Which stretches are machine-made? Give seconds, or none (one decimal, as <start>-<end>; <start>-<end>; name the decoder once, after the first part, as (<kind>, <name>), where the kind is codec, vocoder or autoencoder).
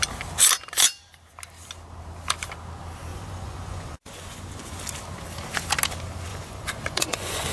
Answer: 3.1-4.8 (vocoder, Vocos); 6.3-7.5